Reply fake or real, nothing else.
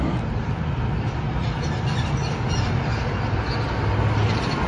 real